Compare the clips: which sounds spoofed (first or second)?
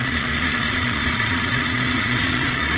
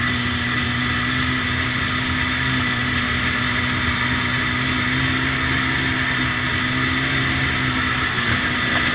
first